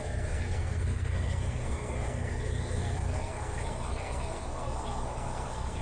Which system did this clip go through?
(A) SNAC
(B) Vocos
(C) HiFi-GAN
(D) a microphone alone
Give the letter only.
A